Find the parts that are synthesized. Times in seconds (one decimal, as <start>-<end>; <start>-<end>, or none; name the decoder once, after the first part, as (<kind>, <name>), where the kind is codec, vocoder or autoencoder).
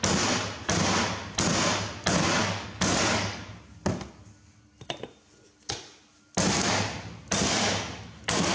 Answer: 2.4-3.5 (codec, DAC)